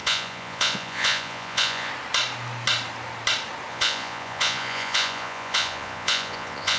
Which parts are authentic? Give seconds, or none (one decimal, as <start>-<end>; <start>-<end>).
1.9-3.7